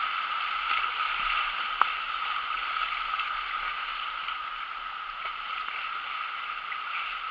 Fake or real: real